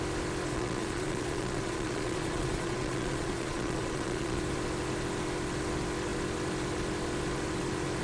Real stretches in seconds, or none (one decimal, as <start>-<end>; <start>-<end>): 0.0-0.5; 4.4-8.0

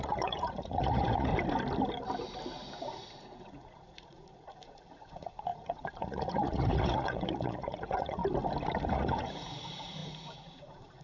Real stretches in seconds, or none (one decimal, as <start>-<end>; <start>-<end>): 1.3-2.8; 8.2-8.9

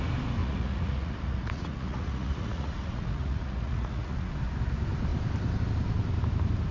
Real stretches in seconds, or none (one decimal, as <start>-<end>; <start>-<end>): 0.0-0.4; 4.3-6.7

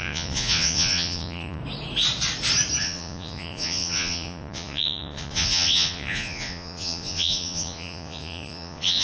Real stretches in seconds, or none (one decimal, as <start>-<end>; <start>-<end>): 1.6-2.8

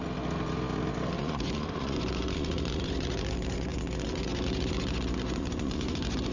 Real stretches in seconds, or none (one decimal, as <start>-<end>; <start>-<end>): 0.0-1.2

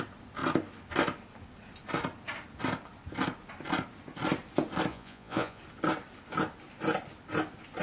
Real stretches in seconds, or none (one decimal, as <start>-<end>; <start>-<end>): 0.0-4.9; 5.6-7.8

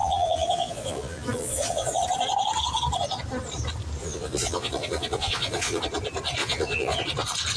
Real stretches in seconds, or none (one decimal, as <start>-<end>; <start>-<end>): 2.0-4.0; 5.8-6.4; 7.0-7.6

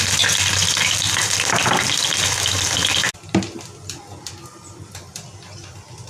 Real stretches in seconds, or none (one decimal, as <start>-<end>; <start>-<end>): 0.0-6.1